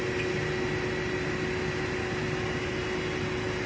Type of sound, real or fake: real